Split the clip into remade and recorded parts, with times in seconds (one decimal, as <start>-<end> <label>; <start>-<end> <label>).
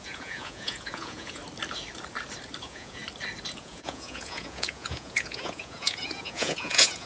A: 0.0-1.4 remade; 1.4-2.6 recorded; 2.6-3.0 remade; 3.0-3.6 recorded; 3.6-7.1 remade